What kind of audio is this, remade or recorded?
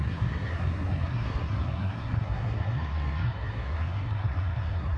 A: remade